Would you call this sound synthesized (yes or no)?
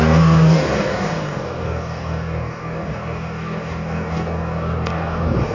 yes